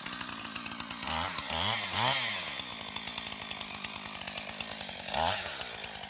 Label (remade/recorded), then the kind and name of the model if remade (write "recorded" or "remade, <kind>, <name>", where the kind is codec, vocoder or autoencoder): recorded